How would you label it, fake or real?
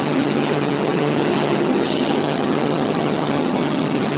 fake